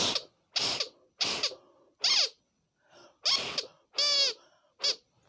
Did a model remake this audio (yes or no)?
no